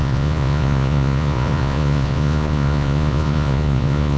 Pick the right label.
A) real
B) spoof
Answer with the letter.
B